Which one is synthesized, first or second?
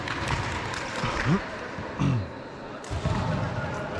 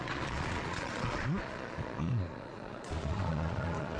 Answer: second